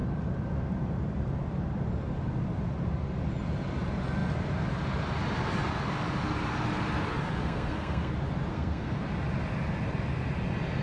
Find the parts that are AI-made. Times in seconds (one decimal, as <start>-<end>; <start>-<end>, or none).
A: 7.4-8.1; 8.5-9.0